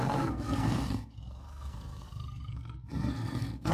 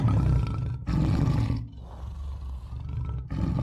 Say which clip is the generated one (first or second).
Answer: first